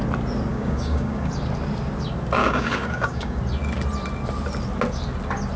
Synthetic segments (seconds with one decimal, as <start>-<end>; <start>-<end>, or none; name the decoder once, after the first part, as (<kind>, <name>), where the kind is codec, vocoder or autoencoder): 0.5-1.3 (codec, DAC); 2.4-3.4